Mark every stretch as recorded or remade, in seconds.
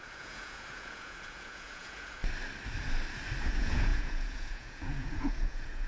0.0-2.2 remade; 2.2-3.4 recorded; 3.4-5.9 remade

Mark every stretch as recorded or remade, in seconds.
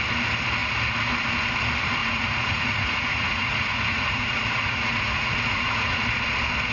0.0-2.0 recorded; 2.0-6.0 remade; 6.0-6.7 recorded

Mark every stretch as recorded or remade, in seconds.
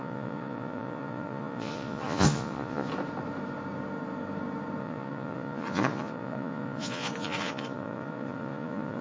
0.0-2.9 remade; 2.9-4.8 recorded; 4.8-9.0 remade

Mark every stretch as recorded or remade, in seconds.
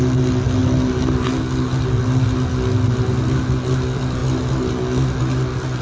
0.0-5.8 recorded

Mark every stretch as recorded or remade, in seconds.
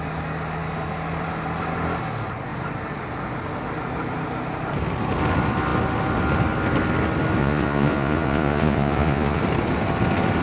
0.0-7.4 recorded; 7.4-9.4 remade; 9.4-10.4 recorded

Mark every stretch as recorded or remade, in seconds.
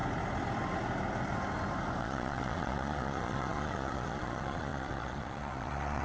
0.0-2.0 recorded; 2.0-6.0 remade